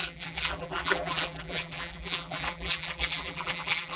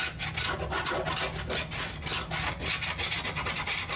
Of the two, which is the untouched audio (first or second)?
second